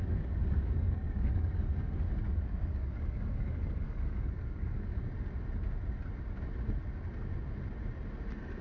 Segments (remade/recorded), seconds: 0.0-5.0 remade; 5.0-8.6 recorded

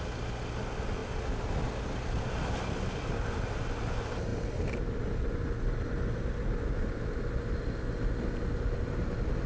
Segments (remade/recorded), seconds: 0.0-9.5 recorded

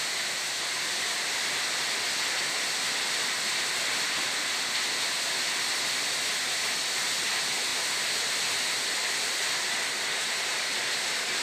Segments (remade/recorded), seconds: 0.0-11.4 recorded

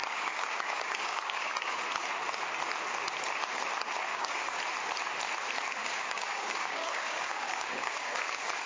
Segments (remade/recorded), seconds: 0.0-1.8 remade; 1.8-4.1 recorded; 4.1-4.6 remade; 4.6-5.8 recorded; 5.8-8.7 remade